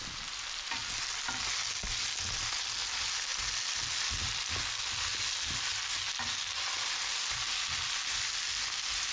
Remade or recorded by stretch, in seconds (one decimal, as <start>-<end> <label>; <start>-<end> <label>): 0.0-3.3 recorded; 3.3-4.4 remade; 4.4-7.1 recorded; 7.1-8.3 remade; 8.3-9.1 recorded